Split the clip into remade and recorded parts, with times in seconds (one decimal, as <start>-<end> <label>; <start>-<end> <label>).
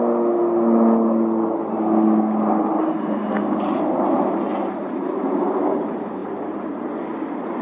0.0-7.6 recorded